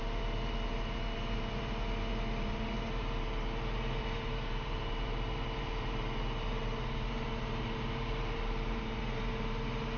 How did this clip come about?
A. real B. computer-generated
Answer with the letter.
B